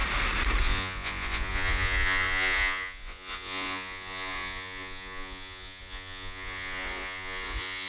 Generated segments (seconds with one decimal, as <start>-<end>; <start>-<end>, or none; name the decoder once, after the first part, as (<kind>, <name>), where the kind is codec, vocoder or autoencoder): 0.6-7.9 (vocoder, Vocos)